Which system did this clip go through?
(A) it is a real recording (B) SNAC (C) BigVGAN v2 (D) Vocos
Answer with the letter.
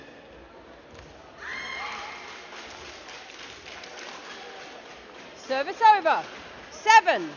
A